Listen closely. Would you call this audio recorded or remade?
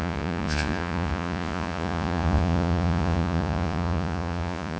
remade